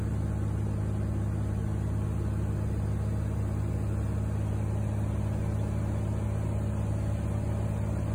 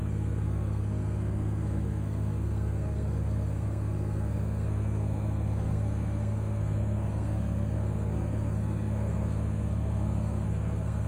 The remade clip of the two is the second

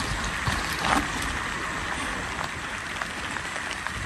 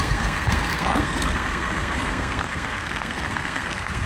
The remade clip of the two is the second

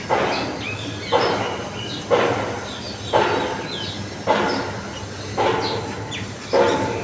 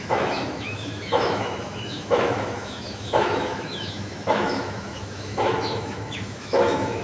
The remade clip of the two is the second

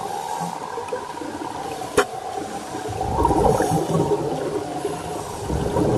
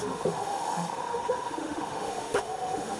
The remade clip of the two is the second